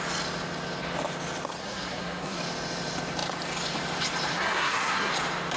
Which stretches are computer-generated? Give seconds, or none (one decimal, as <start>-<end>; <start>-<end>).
1.6-2.4; 4.3-5.1